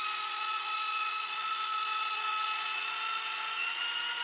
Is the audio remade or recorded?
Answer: remade